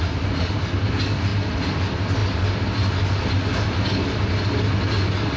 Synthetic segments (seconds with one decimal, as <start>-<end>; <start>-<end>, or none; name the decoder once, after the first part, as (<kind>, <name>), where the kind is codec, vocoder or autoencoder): none